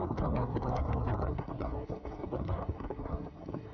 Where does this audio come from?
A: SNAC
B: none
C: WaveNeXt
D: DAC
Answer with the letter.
A